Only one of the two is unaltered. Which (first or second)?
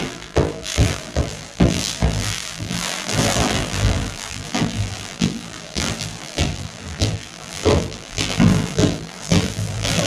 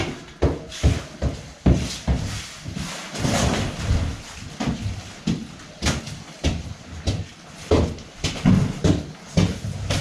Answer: second